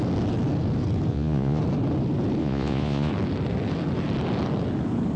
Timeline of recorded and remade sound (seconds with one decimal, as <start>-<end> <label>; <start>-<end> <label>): 0.0-1.1 recorded; 1.1-1.6 remade; 1.6-2.4 recorded; 2.4-3.1 remade; 3.1-5.2 recorded